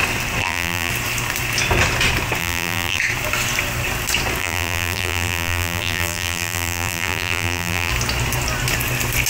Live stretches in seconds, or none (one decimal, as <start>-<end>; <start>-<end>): 0.0-0.4; 0.9-2.4; 3.0-4.4; 7.9-9.3